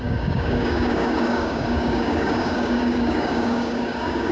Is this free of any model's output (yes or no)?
no